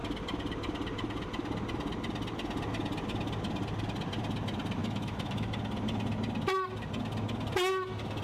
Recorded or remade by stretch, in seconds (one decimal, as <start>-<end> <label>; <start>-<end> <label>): 0.0-4.8 recorded; 4.8-5.5 remade; 5.5-8.2 recorded